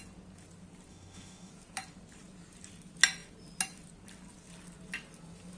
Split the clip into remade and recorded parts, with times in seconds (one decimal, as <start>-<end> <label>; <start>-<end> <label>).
0.0-0.9 recorded; 0.9-1.5 remade; 1.5-5.6 recorded